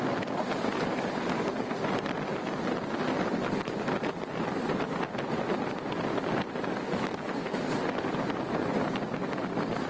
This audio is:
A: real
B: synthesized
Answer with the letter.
A